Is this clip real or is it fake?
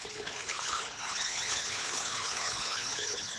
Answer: fake